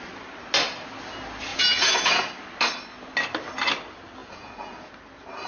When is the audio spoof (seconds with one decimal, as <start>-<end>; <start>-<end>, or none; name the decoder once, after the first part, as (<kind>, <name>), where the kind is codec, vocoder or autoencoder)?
1.5-2.3 (vocoder, Vocos); 4.2-4.9

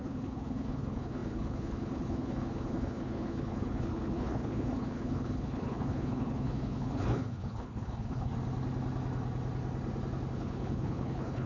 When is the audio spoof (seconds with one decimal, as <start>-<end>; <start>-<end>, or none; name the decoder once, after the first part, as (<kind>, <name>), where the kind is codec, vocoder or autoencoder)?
0.0-8.3 (codec, HILCodec); 10.3-11.5

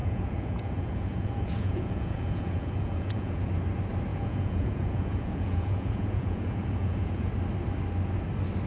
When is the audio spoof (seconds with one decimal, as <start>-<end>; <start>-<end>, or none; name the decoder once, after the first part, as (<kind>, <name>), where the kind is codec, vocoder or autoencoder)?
0.0-3.5 (vocoder, Vocos); 4.1-7.3

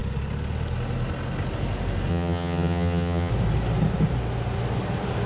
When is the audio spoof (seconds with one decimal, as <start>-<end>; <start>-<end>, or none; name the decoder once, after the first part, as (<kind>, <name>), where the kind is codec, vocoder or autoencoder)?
2.1-3.3 (vocoder, HiFi-GAN)

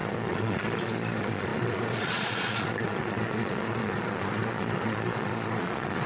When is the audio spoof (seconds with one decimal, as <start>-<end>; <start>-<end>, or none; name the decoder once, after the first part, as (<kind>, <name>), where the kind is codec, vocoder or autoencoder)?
0.0-6.1 (vocoder, Vocos)

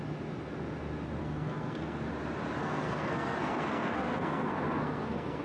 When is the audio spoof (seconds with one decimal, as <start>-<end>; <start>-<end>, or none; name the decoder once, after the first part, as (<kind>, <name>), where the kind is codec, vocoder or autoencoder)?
1.2-2.1 (codec, SNAC); 2.6-5.4

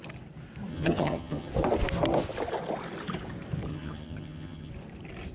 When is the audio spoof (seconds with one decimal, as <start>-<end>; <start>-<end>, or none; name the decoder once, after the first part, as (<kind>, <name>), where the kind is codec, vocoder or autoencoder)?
0.7-1.5 (vocoder, HiFi-GAN); 3.7-4.7